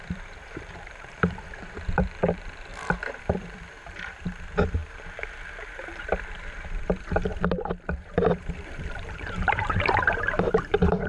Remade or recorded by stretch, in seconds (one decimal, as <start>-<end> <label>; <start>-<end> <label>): 0.0-2.7 remade; 2.7-3.2 recorded; 3.2-7.3 remade; 7.3-7.9 recorded; 7.9-11.1 remade